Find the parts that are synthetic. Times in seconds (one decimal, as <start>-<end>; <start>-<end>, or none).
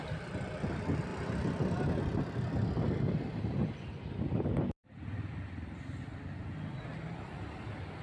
none